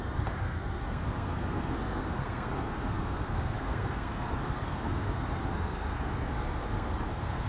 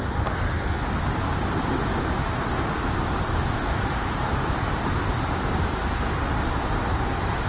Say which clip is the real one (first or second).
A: second